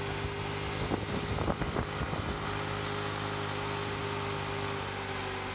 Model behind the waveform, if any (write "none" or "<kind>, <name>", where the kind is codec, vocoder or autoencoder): none